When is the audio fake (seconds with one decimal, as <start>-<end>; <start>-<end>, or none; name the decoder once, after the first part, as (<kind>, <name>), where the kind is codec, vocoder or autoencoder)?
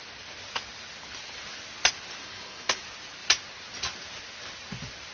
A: 2.2-2.8 (codec, HILCodec)